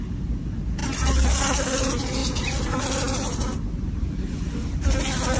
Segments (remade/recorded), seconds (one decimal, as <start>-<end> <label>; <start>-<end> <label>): 0.0-5.4 recorded